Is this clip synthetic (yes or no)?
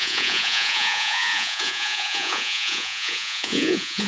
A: yes